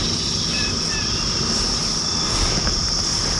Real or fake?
real